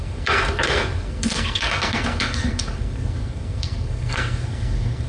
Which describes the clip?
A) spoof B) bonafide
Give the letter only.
A